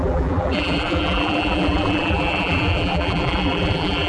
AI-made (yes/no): yes